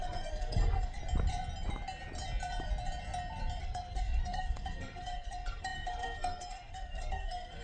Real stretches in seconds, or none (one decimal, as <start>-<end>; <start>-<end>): 1.0-3.6